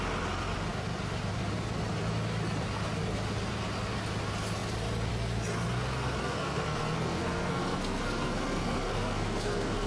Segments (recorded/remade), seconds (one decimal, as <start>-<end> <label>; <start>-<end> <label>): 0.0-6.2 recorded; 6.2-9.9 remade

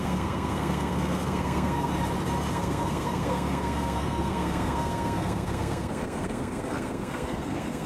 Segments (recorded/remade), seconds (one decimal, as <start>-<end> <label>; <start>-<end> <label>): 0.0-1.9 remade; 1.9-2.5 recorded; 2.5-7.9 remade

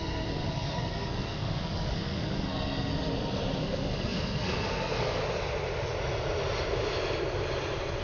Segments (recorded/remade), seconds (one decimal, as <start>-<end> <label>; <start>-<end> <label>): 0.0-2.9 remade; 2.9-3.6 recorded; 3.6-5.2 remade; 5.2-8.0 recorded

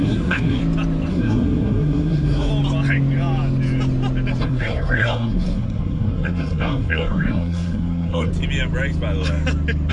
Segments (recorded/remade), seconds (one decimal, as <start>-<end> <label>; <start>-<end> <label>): 0.0-0.6 remade; 0.6-1.1 recorded; 1.1-2.5 remade; 2.5-4.4 recorded; 4.4-8.3 remade; 8.3-9.9 recorded